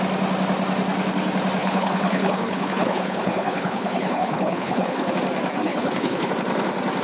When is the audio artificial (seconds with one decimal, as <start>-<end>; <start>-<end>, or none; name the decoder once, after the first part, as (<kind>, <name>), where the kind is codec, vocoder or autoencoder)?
1.6-5.1 (codec, HILCodec); 5.6-6.3